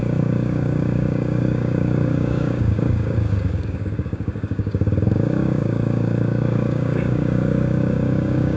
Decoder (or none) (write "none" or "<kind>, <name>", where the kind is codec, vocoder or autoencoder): codec, DAC